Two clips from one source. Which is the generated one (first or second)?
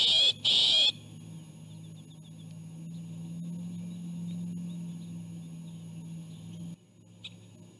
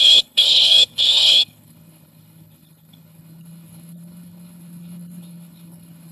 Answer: second